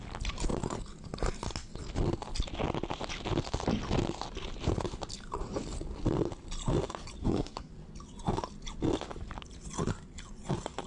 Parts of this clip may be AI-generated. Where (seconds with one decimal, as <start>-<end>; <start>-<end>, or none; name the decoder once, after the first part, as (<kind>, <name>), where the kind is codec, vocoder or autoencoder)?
7.2-7.7 (codec, SNAC)